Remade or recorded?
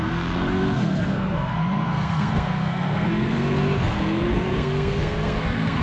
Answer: remade